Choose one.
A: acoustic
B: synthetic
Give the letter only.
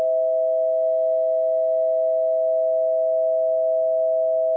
A